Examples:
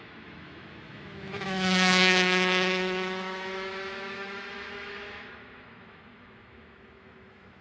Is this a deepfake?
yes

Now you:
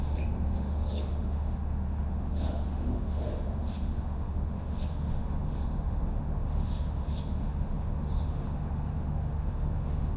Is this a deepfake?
yes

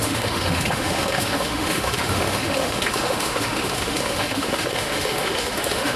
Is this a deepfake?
yes